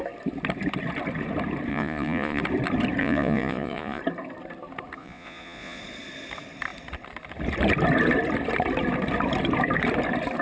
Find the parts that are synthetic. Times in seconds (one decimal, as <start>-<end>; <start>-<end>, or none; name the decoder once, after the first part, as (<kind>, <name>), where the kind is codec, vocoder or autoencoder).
1.7-2.4 (vocoder, Vocos); 3.0-4.0; 5.0-5.8